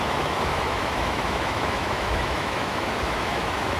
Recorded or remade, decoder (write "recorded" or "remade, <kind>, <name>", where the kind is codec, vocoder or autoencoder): remade, autoencoder, DAC-VAE